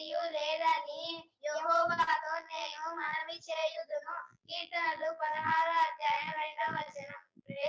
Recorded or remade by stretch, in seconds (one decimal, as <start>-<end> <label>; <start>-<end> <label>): 0.0-0.7 remade; 0.7-2.2 recorded; 2.2-3.2 remade; 3.2-4.1 recorded; 4.1-7.7 remade